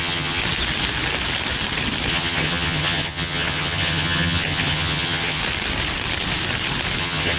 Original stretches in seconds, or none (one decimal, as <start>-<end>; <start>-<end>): 0.4-2.1; 5.4-7.0